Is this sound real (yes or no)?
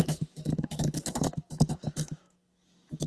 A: no